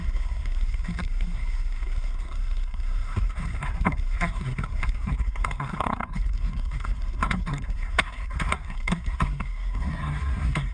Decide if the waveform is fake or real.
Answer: fake